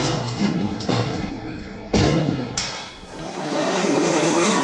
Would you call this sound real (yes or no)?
no